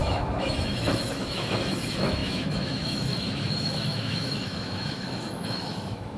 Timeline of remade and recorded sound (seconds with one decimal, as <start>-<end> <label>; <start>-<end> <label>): 0.0-6.2 remade